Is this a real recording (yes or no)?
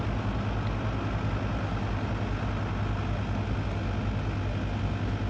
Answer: yes